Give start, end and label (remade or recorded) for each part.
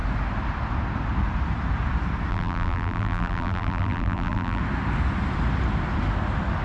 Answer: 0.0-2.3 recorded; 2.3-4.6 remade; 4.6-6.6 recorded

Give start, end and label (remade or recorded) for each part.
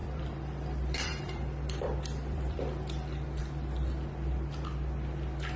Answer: 0.0-3.4 remade; 3.4-5.6 recorded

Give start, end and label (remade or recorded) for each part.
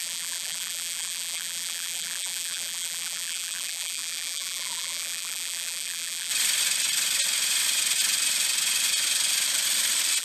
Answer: 0.0-6.3 remade; 6.3-10.2 recorded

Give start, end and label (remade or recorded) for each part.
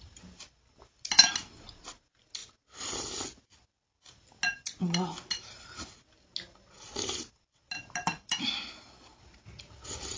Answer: 0.0-10.2 recorded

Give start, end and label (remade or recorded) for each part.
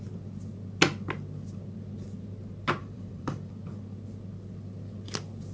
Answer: 0.0-2.8 recorded; 2.8-3.5 remade; 3.5-5.5 recorded